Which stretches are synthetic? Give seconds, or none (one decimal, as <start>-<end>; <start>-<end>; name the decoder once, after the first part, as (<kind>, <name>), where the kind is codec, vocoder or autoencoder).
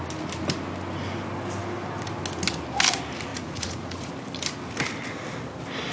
3.3-4.1 (vocoder, Vocos)